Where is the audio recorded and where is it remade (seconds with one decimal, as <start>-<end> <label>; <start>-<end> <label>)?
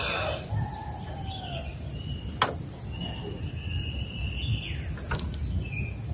0.0-6.1 recorded